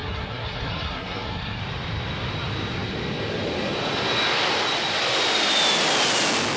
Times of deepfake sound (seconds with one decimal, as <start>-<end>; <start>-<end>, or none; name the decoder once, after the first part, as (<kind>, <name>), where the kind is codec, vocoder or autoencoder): 0.0-1.6 (codec, SNAC)